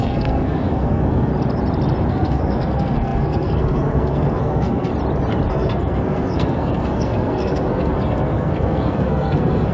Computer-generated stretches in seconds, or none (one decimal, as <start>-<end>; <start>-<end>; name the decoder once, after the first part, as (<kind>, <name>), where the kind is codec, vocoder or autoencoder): 0.0-1.3 (codec, SNAC); 2.1-4.9; 5.5-9.7